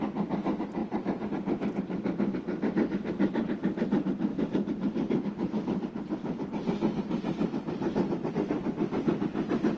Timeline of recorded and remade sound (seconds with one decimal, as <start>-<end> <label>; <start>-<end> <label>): 0.0-4.3 recorded; 4.3-8.3 remade; 8.3-9.8 recorded